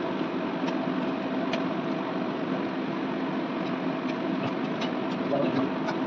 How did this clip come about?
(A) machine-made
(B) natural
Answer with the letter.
B